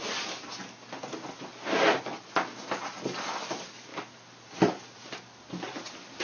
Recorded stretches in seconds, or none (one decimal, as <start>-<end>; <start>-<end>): 0.0-6.2